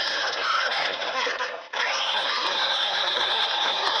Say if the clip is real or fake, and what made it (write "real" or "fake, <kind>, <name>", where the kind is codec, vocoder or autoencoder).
fake, codec, SNAC